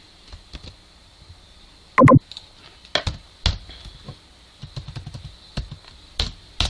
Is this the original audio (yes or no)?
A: yes